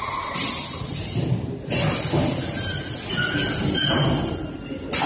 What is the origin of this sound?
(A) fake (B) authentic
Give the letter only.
B